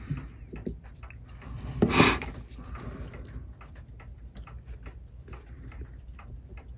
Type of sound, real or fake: real